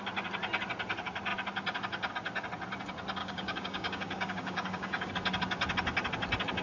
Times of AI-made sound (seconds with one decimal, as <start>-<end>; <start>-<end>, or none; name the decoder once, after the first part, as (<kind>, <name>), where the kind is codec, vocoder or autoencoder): 3.2-5.1 (codec, DAC)